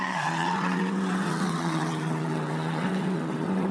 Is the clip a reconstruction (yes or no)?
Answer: yes